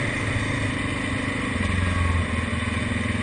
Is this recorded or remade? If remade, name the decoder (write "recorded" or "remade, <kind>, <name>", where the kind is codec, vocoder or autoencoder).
recorded